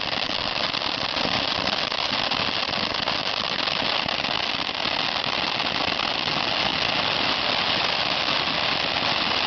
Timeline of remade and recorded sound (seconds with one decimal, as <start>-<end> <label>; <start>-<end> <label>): 0.0-9.5 recorded